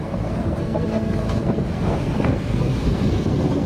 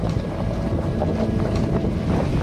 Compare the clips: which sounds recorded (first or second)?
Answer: second